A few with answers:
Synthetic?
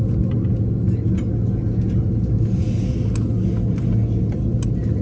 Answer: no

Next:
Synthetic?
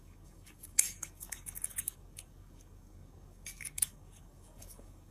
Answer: yes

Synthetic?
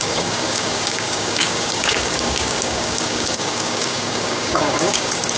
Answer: yes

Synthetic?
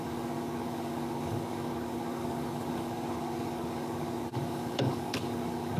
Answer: yes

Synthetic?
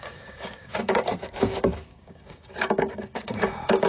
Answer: yes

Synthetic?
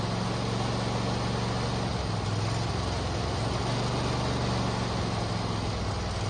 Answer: no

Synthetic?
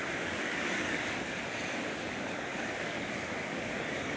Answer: yes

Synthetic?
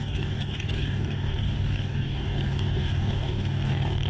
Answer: yes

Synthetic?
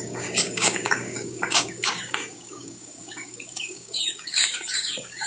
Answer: yes